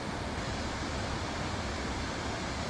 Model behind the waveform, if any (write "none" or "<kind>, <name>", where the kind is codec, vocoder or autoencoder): none